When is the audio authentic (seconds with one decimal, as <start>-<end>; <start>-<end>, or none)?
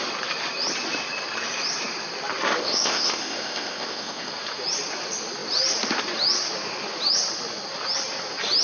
0.0-2.6; 4.3-8.6